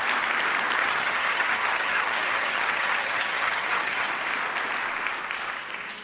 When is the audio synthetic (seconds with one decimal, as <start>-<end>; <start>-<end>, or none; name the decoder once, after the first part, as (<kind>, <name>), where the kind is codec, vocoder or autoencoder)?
0.8-4.1 (vocoder, HiFi-GAN)